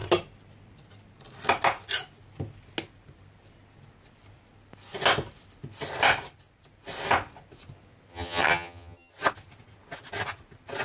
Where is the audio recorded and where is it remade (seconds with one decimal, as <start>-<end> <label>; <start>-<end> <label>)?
0.0-8.1 recorded; 8.1-9.1 remade; 9.1-10.8 recorded